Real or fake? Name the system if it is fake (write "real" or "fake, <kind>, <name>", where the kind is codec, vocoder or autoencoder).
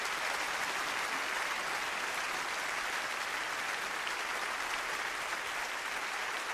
real